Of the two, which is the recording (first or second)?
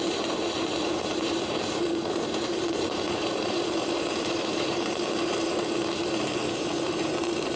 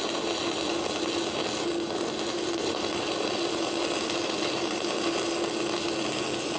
second